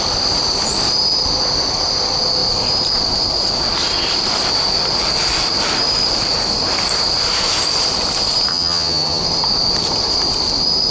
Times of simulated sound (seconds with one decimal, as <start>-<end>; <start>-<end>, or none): 8.5-9.2